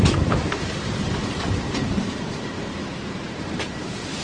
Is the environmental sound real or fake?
fake